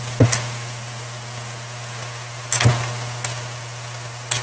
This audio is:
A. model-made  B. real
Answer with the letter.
B